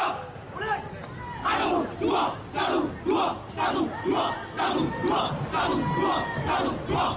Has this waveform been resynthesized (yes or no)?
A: no